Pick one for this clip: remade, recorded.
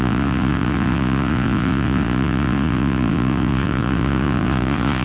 remade